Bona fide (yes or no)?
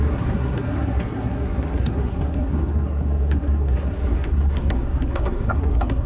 no